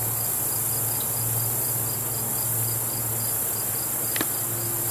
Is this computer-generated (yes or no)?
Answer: no